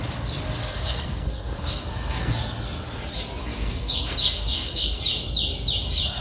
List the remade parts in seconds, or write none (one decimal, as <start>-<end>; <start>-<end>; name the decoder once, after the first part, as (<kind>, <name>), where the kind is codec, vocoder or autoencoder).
0.6-2.3 (codec, SNAC); 3.4-5.0